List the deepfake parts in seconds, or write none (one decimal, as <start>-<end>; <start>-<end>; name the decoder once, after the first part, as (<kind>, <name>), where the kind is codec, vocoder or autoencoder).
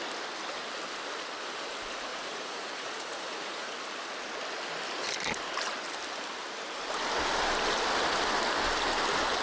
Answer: 2.1-3.7 (vocoder, Vocos)